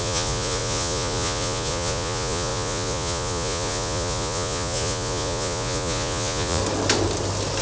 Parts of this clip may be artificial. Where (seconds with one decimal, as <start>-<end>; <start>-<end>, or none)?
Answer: 0.0-6.6